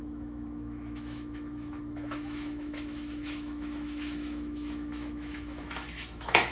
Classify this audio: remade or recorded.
remade